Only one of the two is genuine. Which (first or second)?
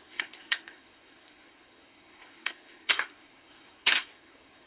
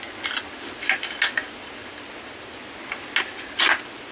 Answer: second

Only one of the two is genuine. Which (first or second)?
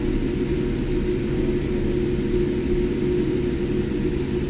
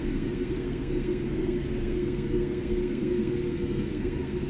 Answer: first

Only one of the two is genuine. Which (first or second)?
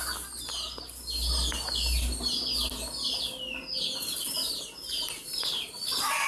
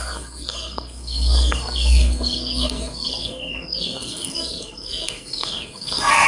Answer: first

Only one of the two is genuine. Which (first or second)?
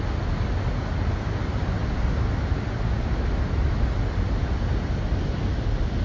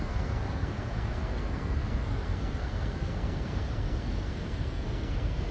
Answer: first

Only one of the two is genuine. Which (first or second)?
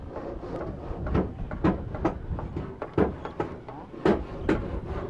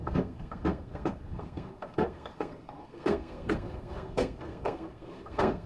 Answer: first